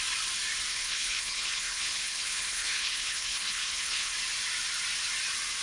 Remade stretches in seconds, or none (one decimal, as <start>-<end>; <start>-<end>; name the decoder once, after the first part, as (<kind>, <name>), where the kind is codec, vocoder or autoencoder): 0.7-4.1 (codec, HILCodec)